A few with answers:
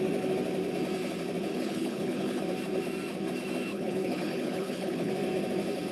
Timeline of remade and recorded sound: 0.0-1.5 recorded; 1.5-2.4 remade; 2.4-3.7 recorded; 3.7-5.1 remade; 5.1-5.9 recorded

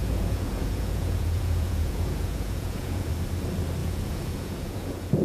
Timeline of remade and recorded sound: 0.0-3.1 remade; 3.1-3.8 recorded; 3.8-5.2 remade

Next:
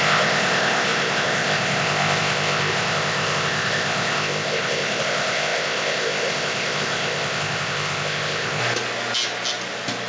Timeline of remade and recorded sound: 0.0-8.6 remade; 8.6-10.1 recorded

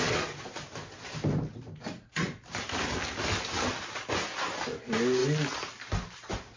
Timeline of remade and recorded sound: 0.0-6.6 recorded